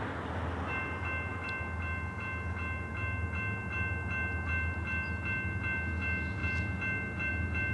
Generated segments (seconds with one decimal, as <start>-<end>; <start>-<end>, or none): none